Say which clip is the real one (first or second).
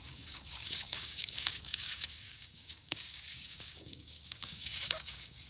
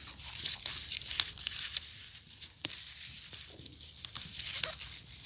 second